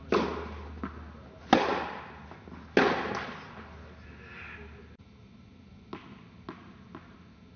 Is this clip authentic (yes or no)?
yes